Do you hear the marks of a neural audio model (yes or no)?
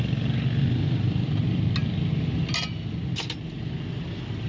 no